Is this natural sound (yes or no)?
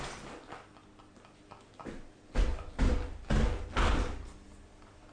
yes